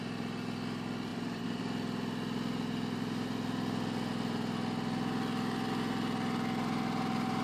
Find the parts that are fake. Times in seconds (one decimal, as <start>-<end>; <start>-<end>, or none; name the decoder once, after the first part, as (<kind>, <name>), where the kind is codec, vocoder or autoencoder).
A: 1.1-1.6 (vocoder, BigVGAN v2)